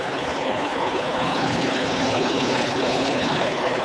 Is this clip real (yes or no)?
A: no